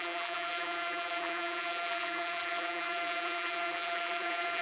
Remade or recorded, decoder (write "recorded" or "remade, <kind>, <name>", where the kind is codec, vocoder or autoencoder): remade, vocoder, BigVGAN v2